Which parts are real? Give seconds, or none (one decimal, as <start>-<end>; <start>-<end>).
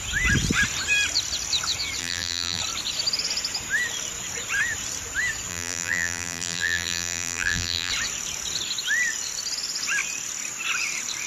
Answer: 0.0-2.0; 2.6-5.5; 7.9-11.3